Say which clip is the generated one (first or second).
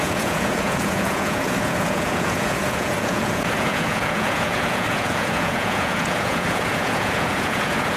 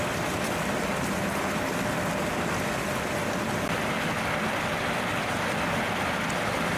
first